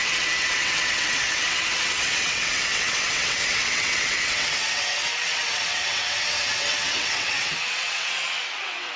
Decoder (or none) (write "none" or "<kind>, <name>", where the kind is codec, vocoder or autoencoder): vocoder, WaveNeXt